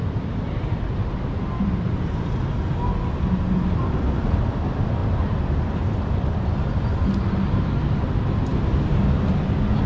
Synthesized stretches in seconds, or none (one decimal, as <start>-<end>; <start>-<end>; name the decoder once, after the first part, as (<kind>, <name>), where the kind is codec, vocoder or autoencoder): none